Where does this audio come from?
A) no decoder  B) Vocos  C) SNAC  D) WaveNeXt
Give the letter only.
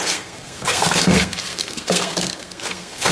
C